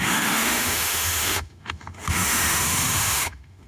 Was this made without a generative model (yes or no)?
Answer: no